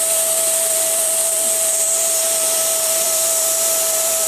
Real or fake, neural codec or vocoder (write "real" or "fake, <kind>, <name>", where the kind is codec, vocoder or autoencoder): fake, vocoder, BigVGAN v2